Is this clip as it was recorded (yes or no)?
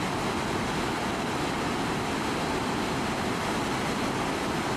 yes